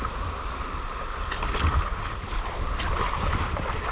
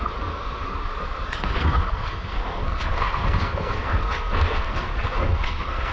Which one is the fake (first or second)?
second